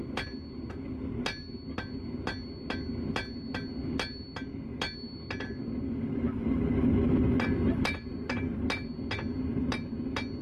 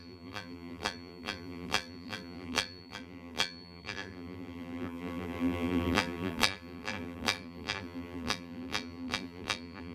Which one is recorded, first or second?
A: first